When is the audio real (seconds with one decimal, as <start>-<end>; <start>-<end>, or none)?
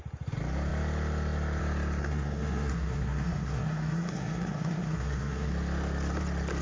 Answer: 0.0-2.0; 5.5-6.6